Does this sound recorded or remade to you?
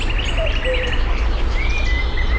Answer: recorded